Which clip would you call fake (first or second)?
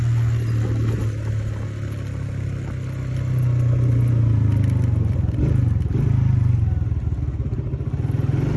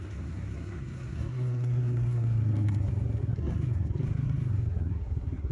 second